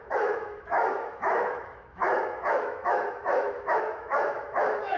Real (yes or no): no